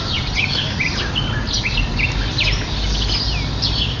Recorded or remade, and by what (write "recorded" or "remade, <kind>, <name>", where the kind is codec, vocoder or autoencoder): recorded